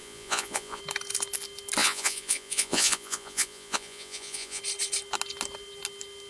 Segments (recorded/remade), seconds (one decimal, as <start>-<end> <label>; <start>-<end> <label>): 0.0-0.8 remade; 0.8-1.8 recorded; 1.8-4.6 remade; 4.6-6.3 recorded